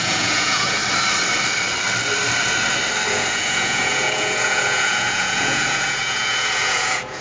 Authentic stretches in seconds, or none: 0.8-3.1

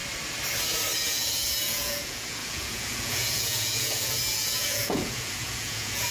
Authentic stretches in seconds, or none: 0.0-1.0

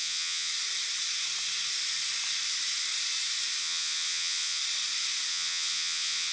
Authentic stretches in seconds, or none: 0.5-3.6; 4.6-5.3

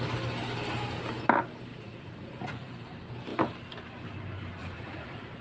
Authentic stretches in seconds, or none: 0.0-1.7; 2.7-4.6

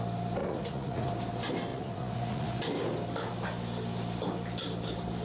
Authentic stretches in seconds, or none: 0.0-0.4; 1.1-1.7; 2.6-5.2